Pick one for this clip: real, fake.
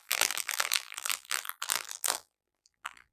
fake